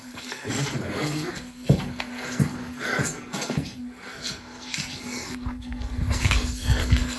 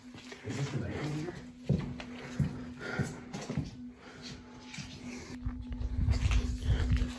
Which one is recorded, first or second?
second